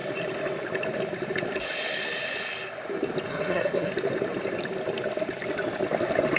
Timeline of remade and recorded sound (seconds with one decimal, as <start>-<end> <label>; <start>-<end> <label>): 0.0-3.3 recorded; 3.3-3.9 remade; 3.9-6.4 recorded